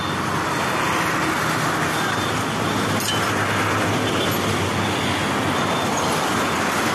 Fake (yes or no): no